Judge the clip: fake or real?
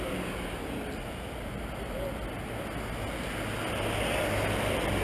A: real